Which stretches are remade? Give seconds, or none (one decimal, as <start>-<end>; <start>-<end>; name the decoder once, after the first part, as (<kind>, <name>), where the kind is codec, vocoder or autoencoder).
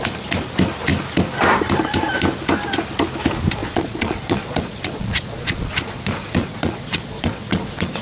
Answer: 3.6-8.0 (vocoder, Vocos)